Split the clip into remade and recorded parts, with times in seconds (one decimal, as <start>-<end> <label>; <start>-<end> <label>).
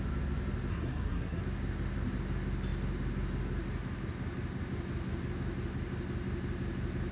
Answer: 0.0-0.7 recorded; 0.7-1.4 remade; 1.4-7.1 recorded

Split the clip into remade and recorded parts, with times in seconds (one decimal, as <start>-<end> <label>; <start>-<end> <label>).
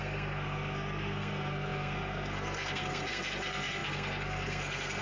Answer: 0.0-5.0 remade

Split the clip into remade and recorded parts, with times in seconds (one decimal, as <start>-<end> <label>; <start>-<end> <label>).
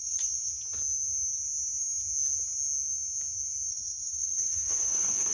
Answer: 0.0-0.5 remade; 0.5-3.7 recorded; 3.7-5.3 remade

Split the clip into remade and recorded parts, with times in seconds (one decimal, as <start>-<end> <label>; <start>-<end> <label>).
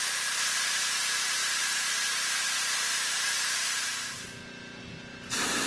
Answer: 0.0-5.7 recorded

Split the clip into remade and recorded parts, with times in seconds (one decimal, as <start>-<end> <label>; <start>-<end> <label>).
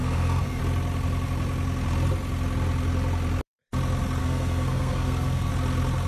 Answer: 0.0-0.6 remade; 0.6-4.2 recorded; 4.2-5.5 remade; 5.5-6.1 recorded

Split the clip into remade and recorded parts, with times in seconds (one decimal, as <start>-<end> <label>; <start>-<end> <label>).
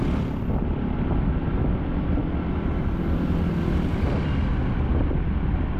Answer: 0.0-5.8 recorded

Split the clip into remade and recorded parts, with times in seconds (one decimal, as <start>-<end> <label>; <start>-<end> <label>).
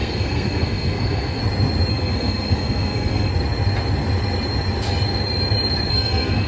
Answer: 0.0-1.4 remade; 1.4-1.9 recorded; 1.9-3.3 remade; 3.3-5.9 recorded; 5.9-6.5 remade